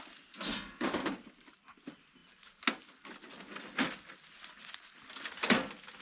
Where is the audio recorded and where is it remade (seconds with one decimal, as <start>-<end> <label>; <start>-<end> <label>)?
0.0-6.0 recorded